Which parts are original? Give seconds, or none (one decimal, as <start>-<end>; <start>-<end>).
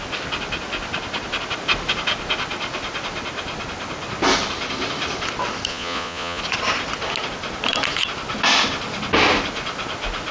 0.0-5.7; 6.4-10.3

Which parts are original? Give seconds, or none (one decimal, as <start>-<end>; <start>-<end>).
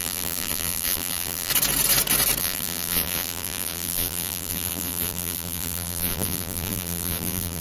1.5-2.4